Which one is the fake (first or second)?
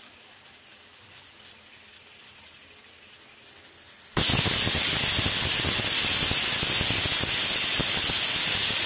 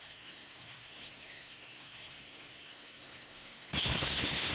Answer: second